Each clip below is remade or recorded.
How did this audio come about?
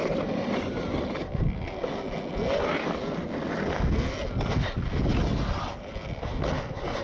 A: recorded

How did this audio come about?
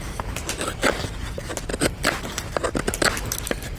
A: recorded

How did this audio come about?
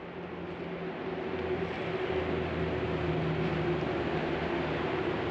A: recorded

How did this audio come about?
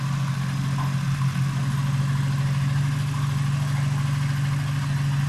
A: recorded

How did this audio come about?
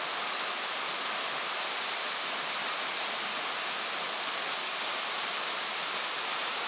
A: remade